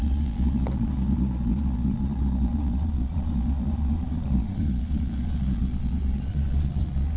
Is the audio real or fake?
fake